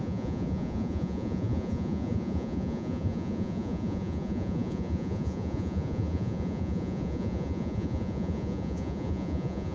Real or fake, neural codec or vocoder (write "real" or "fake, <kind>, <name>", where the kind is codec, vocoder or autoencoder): fake, vocoder, Vocos